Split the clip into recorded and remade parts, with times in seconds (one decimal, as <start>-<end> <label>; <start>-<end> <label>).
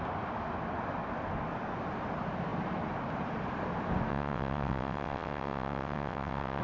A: 0.0-4.1 recorded; 4.1-6.6 remade